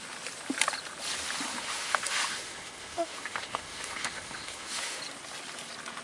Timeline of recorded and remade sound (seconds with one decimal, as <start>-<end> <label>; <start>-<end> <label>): 0.0-1.5 recorded; 1.5-5.0 remade; 5.0-6.0 recorded